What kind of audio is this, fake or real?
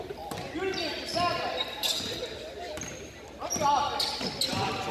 real